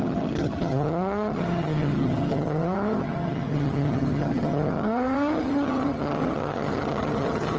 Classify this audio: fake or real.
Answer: fake